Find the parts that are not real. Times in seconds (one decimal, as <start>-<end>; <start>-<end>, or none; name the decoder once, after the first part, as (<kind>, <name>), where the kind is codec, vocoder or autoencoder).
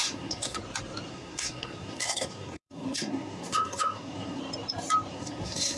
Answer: 0.0-0.6 (codec, SNAC); 1.1-4.4; 5.1-5.8